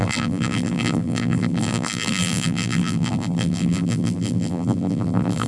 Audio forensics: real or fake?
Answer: fake